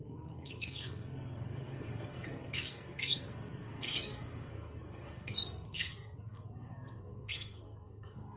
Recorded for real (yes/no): no